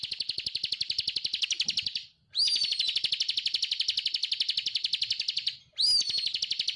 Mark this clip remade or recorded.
recorded